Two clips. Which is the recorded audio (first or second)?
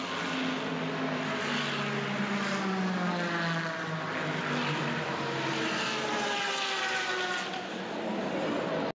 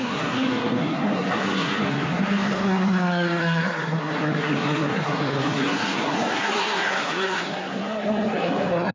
first